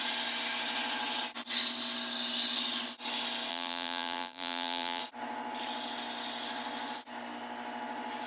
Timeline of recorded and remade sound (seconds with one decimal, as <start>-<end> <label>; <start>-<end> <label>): 0.0-3.5 recorded; 3.5-5.0 remade; 5.0-8.3 recorded